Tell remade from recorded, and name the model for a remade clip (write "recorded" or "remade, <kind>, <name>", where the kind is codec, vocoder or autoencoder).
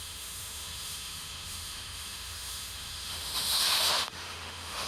remade, autoencoder, DAC-VAE